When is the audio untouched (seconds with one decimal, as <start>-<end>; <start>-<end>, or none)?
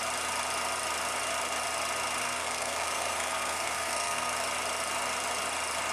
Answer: 0.0-2.2; 4.3-5.9